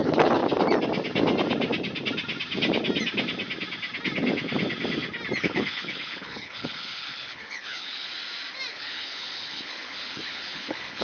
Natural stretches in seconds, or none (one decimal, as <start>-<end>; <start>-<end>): 0.4-5.4; 8.1-8.7